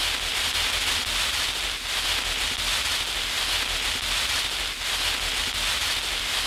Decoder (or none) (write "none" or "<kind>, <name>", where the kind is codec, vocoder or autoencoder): none